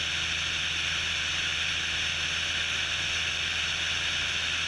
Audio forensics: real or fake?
real